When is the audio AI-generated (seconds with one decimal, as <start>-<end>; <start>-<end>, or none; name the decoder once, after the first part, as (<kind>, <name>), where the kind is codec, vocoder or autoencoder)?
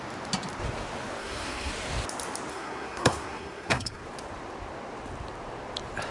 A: 1.2-1.7 (codec, SNAC); 2.5-4.0